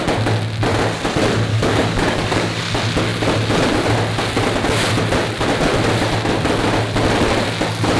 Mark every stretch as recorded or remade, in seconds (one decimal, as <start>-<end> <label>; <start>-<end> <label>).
0.0-1.5 recorded; 1.5-2.6 remade; 2.6-8.0 recorded

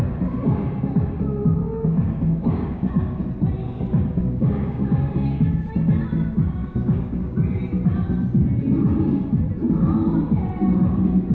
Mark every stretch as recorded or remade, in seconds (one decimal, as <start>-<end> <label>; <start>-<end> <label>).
0.0-1.6 recorded; 1.6-3.2 remade; 3.2-3.6 recorded; 3.6-5.7 remade; 5.7-6.6 recorded; 6.6-7.6 remade; 7.6-11.3 recorded

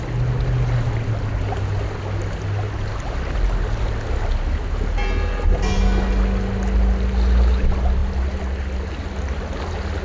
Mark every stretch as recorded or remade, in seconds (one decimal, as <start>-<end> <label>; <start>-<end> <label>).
0.0-10.0 recorded

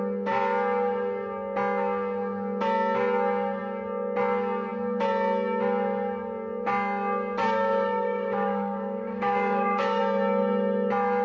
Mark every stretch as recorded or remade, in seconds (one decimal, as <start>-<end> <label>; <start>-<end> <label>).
0.0-7.4 recorded; 7.4-10.0 remade; 10.0-11.2 recorded

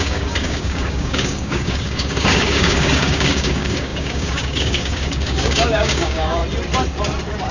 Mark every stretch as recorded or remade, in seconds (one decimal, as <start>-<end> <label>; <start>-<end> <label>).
0.0-6.4 remade; 6.4-7.5 recorded

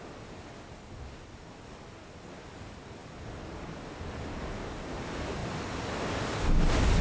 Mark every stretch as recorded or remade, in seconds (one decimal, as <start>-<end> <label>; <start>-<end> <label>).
0.0-7.0 recorded

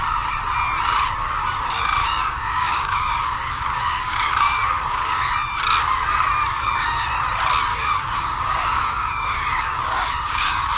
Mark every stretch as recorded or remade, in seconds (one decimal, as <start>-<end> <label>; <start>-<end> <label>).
0.0-2.0 recorded; 2.0-5.3 remade; 5.3-7.7 recorded; 7.7-10.8 remade